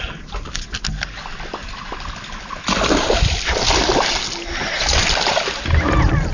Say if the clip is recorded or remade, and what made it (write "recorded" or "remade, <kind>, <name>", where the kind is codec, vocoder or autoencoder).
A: recorded